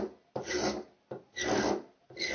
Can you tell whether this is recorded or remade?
recorded